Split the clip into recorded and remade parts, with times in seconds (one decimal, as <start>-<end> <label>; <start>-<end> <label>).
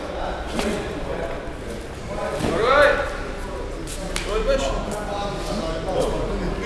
0.0-6.7 recorded